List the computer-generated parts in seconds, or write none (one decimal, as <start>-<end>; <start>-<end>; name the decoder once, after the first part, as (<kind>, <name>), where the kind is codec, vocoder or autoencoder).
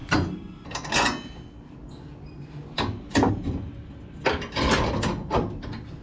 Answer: none